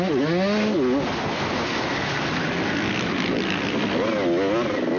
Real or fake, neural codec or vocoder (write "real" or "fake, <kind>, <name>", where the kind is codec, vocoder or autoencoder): real